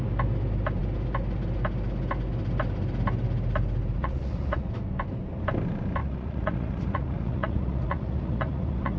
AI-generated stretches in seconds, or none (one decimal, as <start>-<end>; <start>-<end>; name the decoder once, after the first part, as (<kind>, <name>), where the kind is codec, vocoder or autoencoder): 4.0-4.7 (vocoder, Vocos); 6.0-9.0